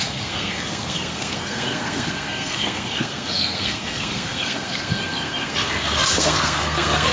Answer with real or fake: fake